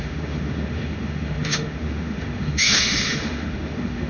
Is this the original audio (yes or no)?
no